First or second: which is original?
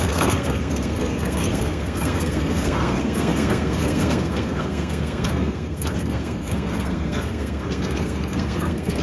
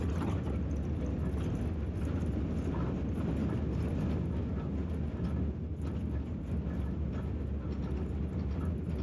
second